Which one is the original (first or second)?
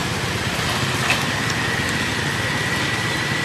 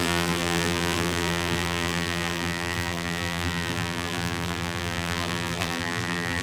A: first